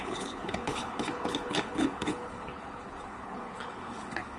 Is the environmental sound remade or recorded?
remade